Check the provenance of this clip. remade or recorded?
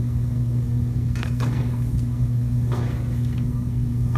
remade